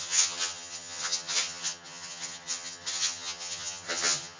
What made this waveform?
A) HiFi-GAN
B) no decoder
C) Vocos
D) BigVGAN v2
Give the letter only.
A